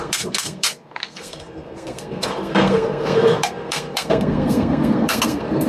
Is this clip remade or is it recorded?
remade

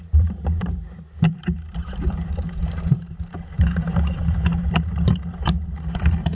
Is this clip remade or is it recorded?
remade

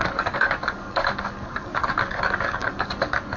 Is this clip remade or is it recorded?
remade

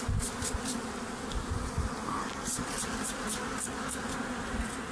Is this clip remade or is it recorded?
recorded